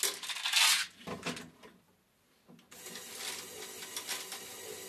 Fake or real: real